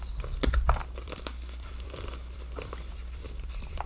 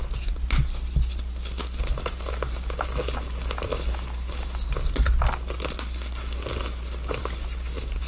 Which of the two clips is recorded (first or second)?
second